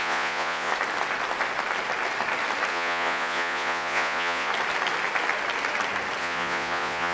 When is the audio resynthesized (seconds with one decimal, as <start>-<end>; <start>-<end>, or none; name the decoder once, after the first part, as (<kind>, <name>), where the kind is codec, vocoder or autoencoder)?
0.0-0.7 (vocoder, Vocos); 2.7-4.5; 6.2-7.1